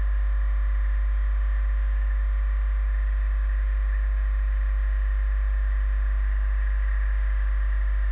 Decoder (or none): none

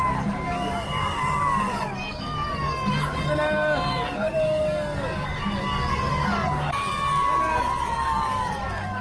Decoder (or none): codec, DAC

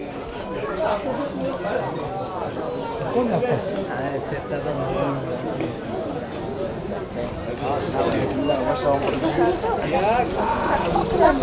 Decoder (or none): none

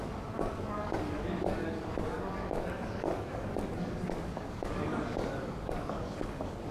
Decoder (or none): codec, DAC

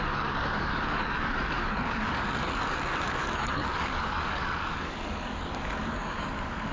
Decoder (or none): codec, DAC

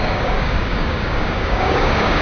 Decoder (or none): codec, DAC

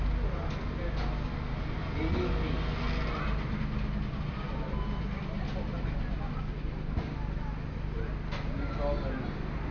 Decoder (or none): none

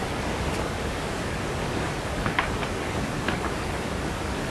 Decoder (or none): codec, DAC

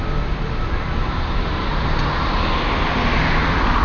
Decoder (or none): none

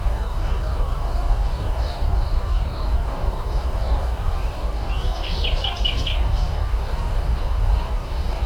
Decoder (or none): codec, DAC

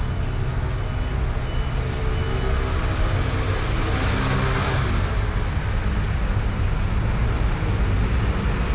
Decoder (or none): none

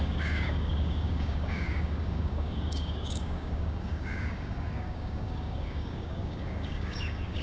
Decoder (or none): codec, DAC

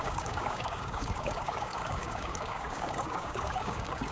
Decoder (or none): codec, DAC